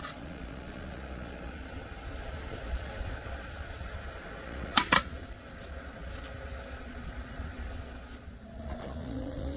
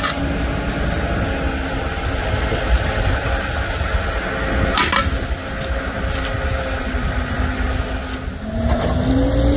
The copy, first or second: first